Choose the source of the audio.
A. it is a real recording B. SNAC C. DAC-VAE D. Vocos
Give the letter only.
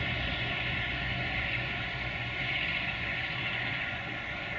D